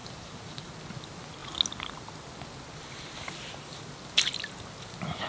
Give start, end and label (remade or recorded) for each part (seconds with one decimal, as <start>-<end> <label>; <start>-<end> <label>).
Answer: 0.0-0.7 remade; 0.7-5.3 recorded